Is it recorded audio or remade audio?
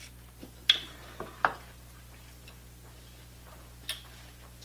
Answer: recorded